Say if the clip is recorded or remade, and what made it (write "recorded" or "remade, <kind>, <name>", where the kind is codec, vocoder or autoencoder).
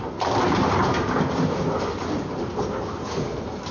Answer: recorded